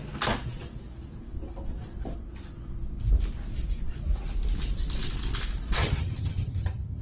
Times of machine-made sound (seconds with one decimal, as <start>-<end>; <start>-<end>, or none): 5.8-7.0